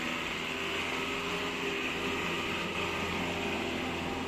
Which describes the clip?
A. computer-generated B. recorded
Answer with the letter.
B